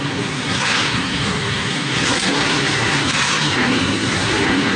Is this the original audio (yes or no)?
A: no